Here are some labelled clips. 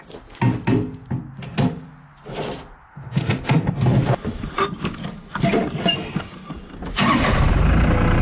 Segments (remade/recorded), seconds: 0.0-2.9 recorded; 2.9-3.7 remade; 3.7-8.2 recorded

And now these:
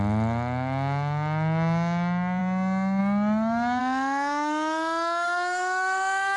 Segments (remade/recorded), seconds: 0.0-3.8 recorded; 3.8-6.4 remade